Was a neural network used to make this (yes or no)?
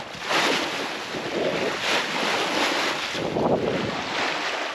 no